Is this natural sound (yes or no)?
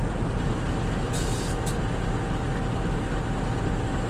yes